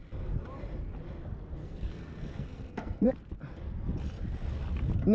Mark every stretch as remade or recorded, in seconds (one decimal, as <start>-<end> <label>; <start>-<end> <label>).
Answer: 0.0-1.6 recorded; 1.6-3.1 remade; 3.1-5.1 recorded

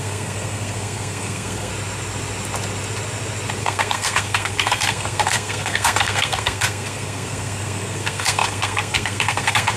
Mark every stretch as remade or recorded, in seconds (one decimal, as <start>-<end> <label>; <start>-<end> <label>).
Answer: 0.0-1.7 remade; 1.7-3.6 recorded; 3.6-9.8 remade